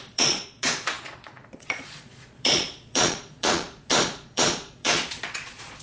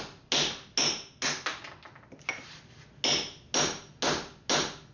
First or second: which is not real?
first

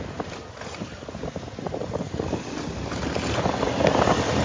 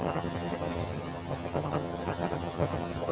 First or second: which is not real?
second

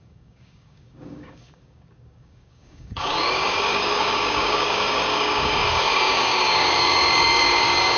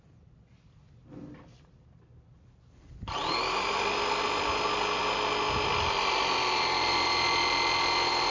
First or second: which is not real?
first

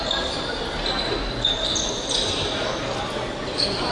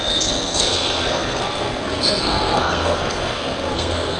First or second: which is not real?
second